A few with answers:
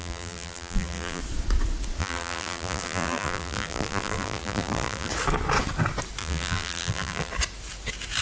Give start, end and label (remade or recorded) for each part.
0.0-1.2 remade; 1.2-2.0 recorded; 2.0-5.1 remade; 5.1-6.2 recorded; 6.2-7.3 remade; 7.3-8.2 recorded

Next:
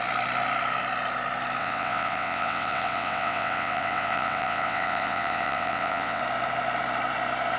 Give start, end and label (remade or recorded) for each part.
0.0-1.6 recorded; 1.6-6.2 remade; 6.2-7.6 recorded

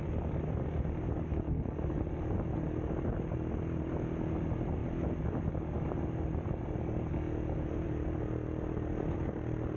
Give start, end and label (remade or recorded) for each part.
0.0-9.8 recorded

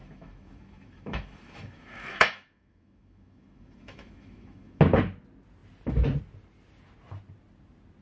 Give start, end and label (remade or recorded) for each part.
0.0-4.8 remade; 4.8-8.0 recorded

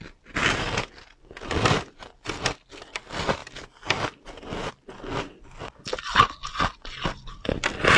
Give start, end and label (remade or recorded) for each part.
0.0-8.0 recorded

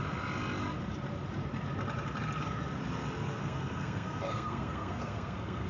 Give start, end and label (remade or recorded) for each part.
0.0-3.4 recorded; 3.4-5.7 remade